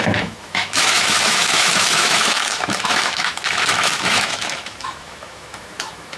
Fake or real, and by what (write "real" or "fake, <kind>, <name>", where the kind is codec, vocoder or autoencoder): fake, autoencoder, DAC-VAE